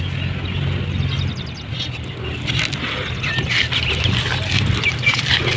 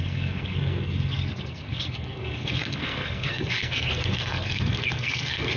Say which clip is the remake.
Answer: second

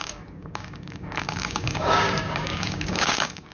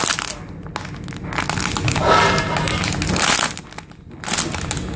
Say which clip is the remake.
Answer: first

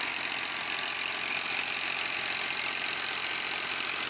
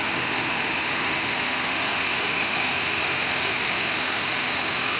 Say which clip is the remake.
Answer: second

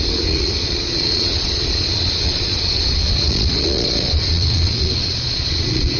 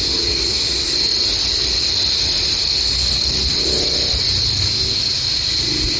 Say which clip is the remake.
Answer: first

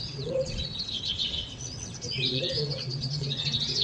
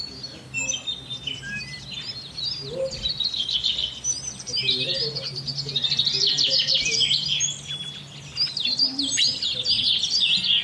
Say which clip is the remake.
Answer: first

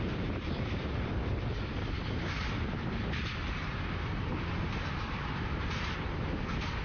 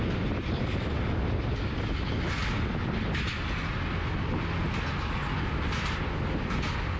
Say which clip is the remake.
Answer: first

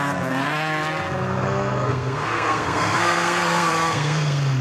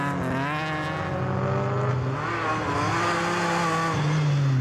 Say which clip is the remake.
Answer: first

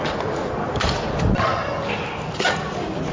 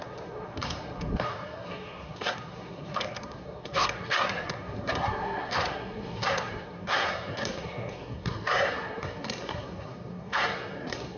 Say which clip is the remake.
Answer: second